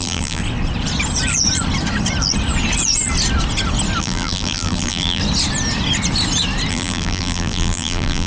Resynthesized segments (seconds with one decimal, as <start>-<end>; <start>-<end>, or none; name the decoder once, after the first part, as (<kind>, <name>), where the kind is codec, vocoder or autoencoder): 0.0-0.4 (vocoder, BigVGAN v2); 4.0-5.2; 6.7-8.3